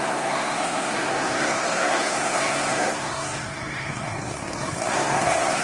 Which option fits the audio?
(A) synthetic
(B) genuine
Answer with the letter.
A